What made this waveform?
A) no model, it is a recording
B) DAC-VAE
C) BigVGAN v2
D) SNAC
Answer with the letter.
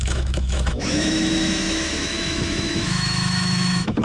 B